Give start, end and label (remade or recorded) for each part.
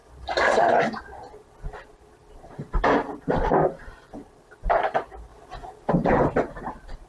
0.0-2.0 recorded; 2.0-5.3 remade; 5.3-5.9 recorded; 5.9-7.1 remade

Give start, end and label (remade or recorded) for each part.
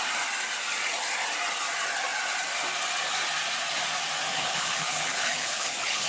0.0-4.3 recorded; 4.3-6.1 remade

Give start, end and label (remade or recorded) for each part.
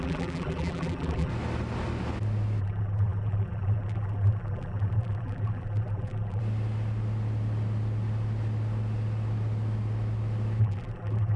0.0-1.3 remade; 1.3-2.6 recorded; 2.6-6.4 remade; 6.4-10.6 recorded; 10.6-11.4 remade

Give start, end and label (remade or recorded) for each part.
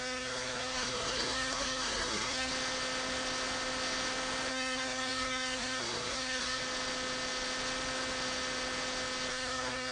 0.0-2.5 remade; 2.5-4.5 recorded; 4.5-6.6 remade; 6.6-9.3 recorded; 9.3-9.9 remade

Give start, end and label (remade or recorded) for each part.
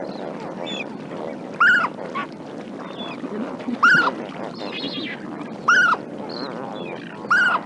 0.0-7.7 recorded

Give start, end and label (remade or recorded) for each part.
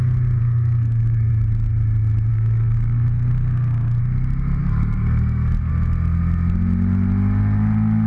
0.0-0.4 recorded; 0.4-1.3 remade; 1.3-2.3 recorded; 2.3-4.0 remade; 4.0-4.6 recorded; 4.6-5.7 remade; 5.7-8.1 recorded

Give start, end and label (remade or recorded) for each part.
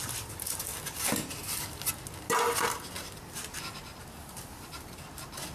0.0-5.5 recorded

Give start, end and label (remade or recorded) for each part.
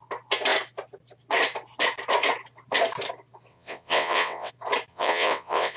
0.0-3.5 recorded; 3.5-4.5 remade; 4.5-4.9 recorded; 4.9-5.8 remade